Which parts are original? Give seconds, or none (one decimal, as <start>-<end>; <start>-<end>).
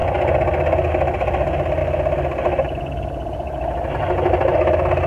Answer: 0.0-5.1